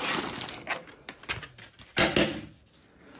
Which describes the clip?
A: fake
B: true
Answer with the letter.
B